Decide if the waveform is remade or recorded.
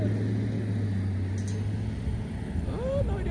recorded